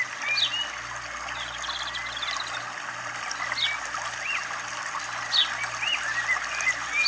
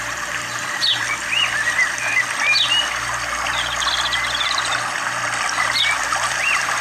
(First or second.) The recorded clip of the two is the first